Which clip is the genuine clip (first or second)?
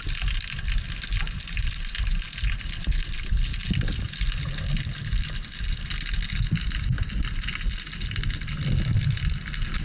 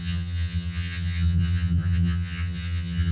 first